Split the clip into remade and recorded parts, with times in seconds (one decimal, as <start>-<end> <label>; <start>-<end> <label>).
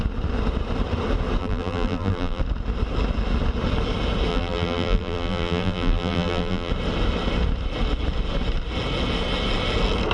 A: 0.0-1.4 recorded; 1.4-2.4 remade; 2.4-4.3 recorded; 4.3-6.7 remade; 6.7-10.1 recorded